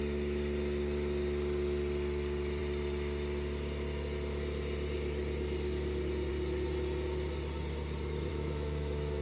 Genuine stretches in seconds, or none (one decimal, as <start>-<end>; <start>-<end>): 0.0-8.3